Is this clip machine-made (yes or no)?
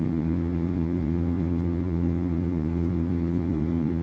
yes